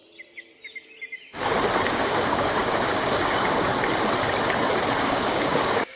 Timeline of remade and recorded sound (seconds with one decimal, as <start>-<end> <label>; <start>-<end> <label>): 0.0-1.9 recorded; 1.9-3.7 remade; 3.7-5.0 recorded; 5.0-6.0 remade